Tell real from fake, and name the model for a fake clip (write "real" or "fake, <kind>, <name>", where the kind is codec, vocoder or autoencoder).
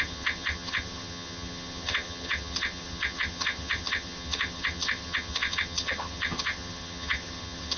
fake, vocoder, HiFi-GAN